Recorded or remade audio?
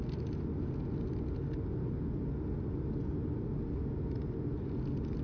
recorded